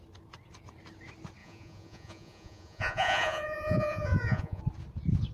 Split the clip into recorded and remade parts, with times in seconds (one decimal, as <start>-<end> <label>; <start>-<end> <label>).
0.0-1.4 recorded; 1.4-4.6 remade; 4.6-5.3 recorded